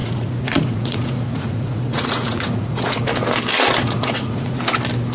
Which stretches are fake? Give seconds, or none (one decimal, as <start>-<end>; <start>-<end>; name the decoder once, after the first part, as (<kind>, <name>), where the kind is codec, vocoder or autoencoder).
0.0-3.1 (vocoder, Vocos); 3.8-4.6